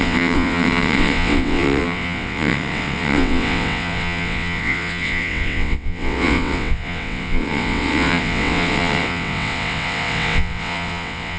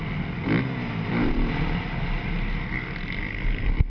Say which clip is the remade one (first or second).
first